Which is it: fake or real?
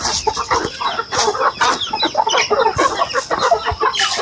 real